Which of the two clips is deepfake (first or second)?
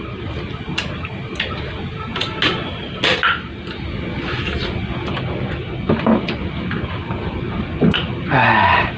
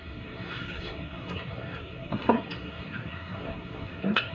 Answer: second